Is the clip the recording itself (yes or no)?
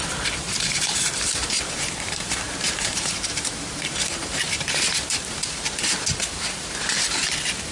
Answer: no